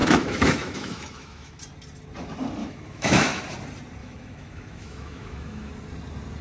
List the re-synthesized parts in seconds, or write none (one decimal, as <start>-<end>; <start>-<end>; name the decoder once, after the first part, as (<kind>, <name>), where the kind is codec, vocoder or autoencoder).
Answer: 0.0-1.6 (autoencoder, DAC-VAE); 2.6-3.4; 4.0-5.7